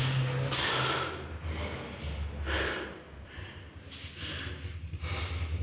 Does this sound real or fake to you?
real